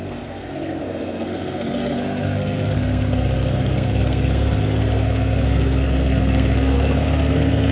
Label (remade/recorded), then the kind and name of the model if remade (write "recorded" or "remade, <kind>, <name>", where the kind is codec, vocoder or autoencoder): remade, codec, SNAC